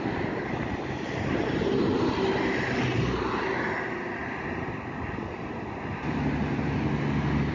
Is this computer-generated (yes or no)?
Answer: no